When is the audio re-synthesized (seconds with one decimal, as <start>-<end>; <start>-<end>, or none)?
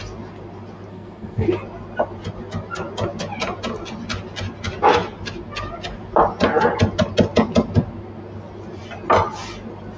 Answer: 0.9-1.5